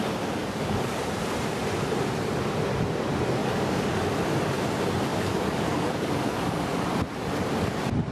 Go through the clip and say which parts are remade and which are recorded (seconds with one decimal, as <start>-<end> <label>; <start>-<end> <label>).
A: 0.0-0.4 recorded; 0.4-1.0 remade; 1.0-3.4 recorded; 3.4-4.0 remade; 4.0-5.1 recorded; 5.1-6.8 remade; 6.8-8.1 recorded